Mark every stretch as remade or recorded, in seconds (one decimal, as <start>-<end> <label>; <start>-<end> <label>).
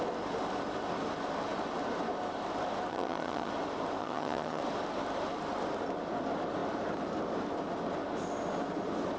0.0-2.9 recorded; 2.9-3.5 remade; 3.5-4.0 recorded; 4.0-4.6 remade; 4.6-9.2 recorded